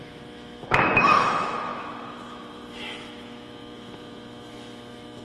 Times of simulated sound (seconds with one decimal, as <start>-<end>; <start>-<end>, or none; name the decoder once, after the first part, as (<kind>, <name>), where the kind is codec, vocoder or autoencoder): 0.0-5.2 (autoencoder, DAC-VAE)

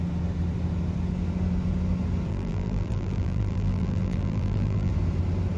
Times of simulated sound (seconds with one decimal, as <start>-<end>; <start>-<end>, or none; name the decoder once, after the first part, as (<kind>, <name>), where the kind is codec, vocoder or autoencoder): 2.3-4.9 (vocoder, BigVGAN v2)

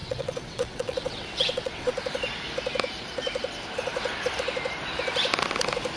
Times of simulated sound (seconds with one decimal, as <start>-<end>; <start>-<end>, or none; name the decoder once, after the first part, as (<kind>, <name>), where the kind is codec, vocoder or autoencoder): 0.0-1.9 (vocoder, WaveNeXt)